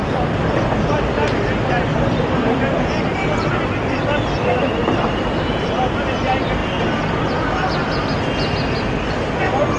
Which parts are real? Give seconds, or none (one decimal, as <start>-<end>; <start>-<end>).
0.6-1.9; 2.6-4.8; 5.7-9.8